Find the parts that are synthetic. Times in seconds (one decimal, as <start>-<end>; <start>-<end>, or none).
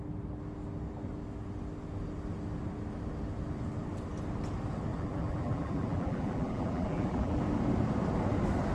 4.9-7.4